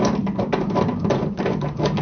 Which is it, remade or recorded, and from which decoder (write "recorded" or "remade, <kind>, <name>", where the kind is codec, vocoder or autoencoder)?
recorded